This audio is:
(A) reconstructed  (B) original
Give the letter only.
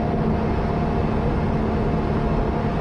B